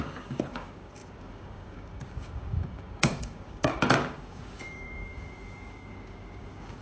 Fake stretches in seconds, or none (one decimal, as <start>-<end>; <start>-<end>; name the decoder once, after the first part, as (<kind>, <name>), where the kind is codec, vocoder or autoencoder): 0.0-6.8 (codec, DAC)